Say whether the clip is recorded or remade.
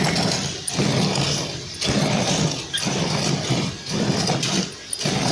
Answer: remade